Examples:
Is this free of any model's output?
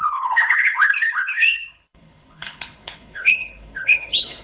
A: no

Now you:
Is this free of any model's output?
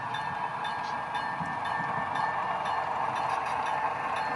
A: yes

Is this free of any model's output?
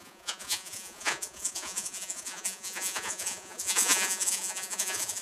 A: no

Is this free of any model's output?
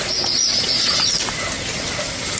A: yes